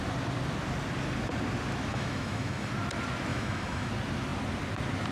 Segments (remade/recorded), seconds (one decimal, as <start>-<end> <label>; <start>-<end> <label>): 0.0-1.9 recorded; 1.9-2.7 remade; 2.7-3.3 recorded; 3.3-3.9 remade; 3.9-5.1 recorded